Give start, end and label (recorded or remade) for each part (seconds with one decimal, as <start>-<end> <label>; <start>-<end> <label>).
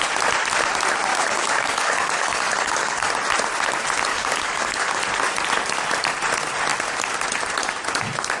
0.0-1.1 recorded; 1.1-3.1 remade; 3.1-4.1 recorded; 4.1-5.0 remade; 5.0-8.4 recorded